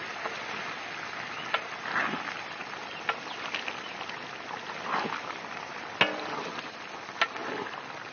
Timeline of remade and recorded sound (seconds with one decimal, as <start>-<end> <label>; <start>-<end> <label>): 0.0-8.1 recorded